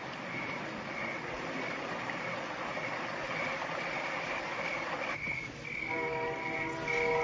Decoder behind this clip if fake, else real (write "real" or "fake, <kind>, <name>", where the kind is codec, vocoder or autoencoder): real